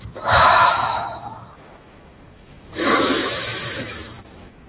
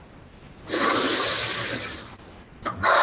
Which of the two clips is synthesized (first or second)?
first